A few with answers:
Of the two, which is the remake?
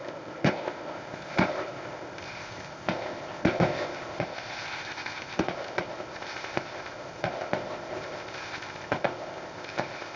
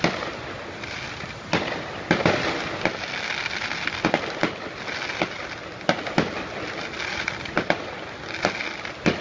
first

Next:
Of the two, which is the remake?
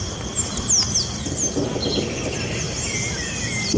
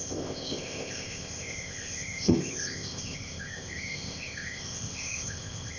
second